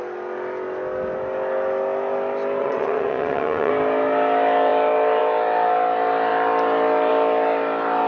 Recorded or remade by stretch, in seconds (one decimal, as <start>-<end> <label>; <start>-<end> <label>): 0.0-2.6 recorded; 2.6-3.7 remade; 3.7-8.1 recorded